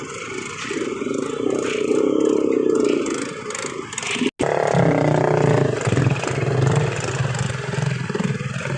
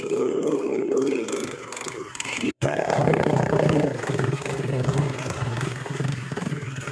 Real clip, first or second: first